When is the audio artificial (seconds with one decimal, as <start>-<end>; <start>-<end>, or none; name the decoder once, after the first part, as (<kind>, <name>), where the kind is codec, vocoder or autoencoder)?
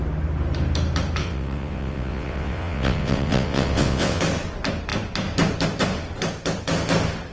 1.2-4.2 (vocoder, WaveNeXt)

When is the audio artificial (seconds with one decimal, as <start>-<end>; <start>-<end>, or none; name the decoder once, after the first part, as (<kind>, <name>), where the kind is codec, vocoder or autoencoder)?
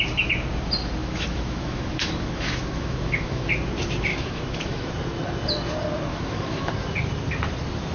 1.0-3.4 (autoencoder, DAC-VAE); 4.1-4.9; 6.1-6.7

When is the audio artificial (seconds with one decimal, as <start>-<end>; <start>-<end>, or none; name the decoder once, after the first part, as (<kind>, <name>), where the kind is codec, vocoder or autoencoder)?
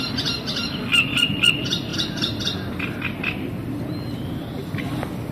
none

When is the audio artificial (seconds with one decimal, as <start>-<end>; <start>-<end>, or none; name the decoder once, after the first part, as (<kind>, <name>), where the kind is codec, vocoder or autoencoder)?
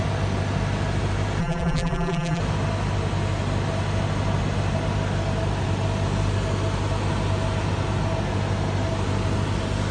1.4-2.4 (vocoder, BigVGAN v2)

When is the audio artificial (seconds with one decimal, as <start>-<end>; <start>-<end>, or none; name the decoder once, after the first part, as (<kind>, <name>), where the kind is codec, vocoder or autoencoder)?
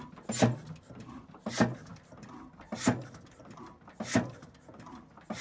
none